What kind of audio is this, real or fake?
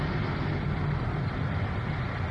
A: real